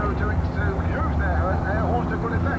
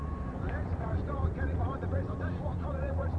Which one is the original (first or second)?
first